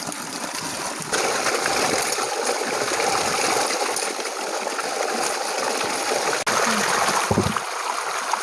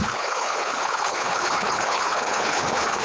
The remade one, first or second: second